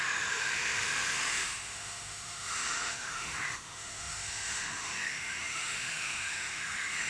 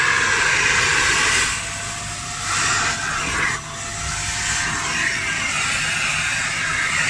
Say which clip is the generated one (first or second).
first